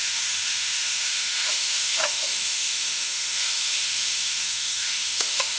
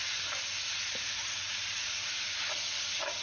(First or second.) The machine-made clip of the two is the first